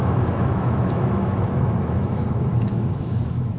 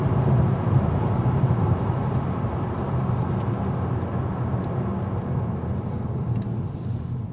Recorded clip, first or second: second